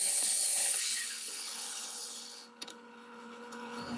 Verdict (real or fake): fake